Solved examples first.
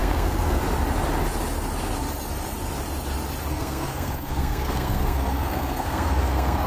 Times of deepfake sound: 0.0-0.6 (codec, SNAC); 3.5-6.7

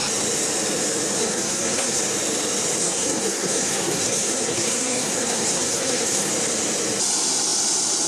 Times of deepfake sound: 1.2-2.0 (codec, SNAC); 2.8-6.3

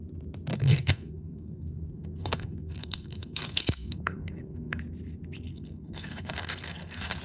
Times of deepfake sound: 0.5-4.8 (codec, SNAC); 5.5-7.2

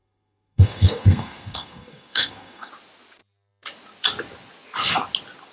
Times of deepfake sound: 0.0-2.7 (codec, SNAC)

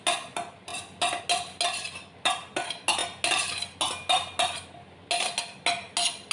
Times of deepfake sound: none

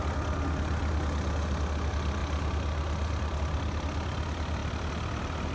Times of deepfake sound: none

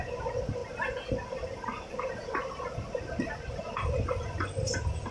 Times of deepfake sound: none